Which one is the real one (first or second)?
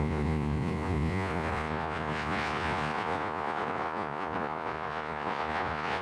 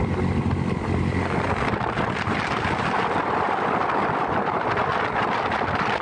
second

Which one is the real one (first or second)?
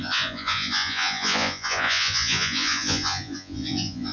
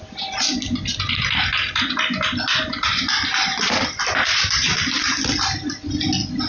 second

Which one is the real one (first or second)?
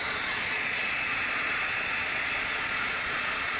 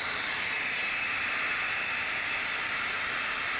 second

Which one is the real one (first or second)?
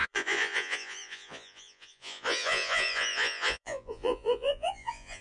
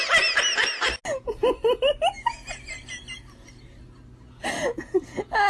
second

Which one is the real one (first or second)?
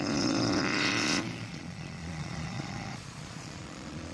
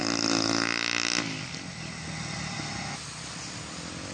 second